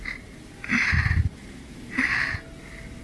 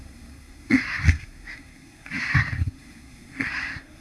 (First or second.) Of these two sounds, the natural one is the first